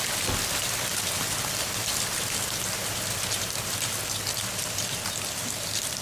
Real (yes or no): yes